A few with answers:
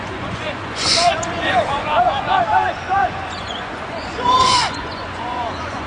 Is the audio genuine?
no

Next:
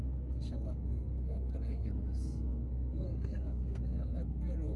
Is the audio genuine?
no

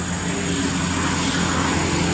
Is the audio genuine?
yes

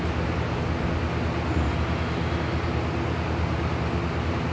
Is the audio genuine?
yes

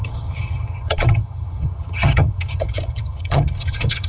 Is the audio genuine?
no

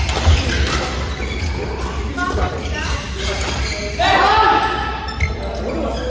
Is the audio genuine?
yes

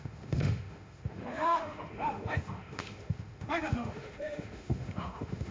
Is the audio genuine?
no